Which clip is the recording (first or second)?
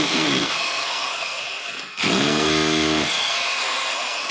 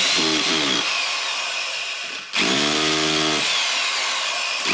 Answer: second